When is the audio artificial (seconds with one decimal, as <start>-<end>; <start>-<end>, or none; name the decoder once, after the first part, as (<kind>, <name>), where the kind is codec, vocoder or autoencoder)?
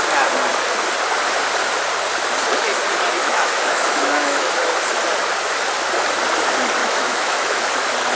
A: 3.2-4.5 (autoencoder, DAC-VAE); 6.8-7.6